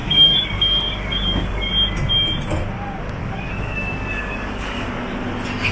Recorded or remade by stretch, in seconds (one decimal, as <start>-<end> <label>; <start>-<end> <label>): 0.0-1.7 remade; 1.7-3.2 recorded; 3.2-5.0 remade; 5.0-5.7 recorded